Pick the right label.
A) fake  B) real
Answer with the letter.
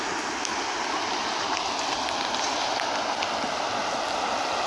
B